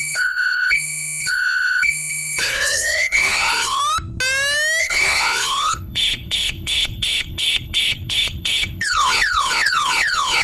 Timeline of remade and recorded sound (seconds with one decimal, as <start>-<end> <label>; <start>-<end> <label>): 0.0-3.8 remade; 3.8-4.8 recorded; 4.8-10.4 remade